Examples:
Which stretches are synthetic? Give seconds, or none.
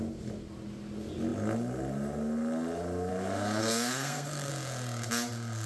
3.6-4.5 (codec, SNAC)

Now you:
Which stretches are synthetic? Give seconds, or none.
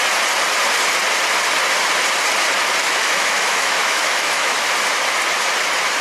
2.8-4.7 (autoencoder, DAC-VAE)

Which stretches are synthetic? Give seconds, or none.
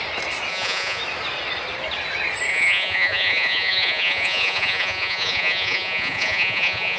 0.5-1.0 (vocoder, Vocos); 2.5-7.0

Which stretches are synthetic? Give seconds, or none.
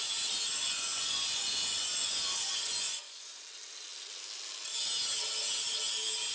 0.5-3.4 (vocoder, Vocos)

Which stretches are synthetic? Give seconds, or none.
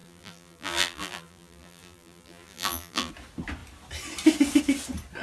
0.0-3.1 (vocoder, BigVGAN v2)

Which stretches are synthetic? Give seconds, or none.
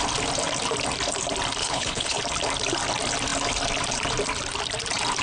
1.6-2.2 (codec, HILCodec)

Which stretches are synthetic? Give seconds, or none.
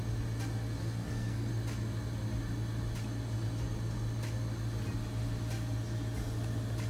0.8-1.5 (codec, SNAC)